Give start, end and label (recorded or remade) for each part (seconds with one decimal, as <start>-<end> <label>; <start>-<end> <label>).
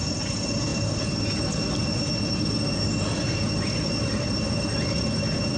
0.0-5.6 recorded